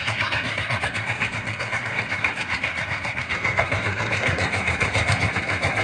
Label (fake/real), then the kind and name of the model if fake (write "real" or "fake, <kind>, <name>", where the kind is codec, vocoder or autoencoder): fake, codec, SNAC